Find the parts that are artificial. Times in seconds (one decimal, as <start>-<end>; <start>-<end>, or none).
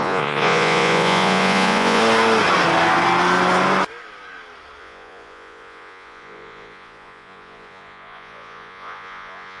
0.0-2.0; 4.8-9.6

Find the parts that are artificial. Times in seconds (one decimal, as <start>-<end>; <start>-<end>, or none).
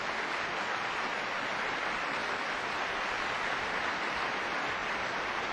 none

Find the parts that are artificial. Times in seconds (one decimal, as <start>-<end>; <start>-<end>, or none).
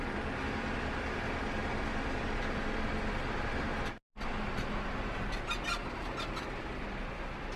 0.0-3.7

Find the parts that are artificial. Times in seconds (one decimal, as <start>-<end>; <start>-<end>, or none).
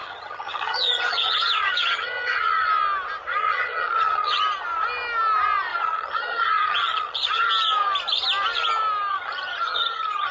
0.0-2.7; 3.3-4.4; 5.7-7.5; 9.1-10.3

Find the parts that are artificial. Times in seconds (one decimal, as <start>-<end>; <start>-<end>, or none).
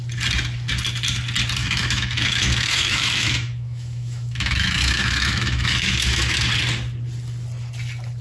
1.6-6.5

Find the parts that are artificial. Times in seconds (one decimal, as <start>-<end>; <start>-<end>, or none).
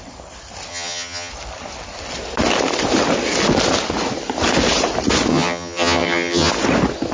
0.7-1.3; 5.3-6.5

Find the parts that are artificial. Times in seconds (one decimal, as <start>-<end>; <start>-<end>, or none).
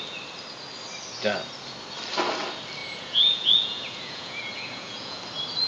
2.8-5.2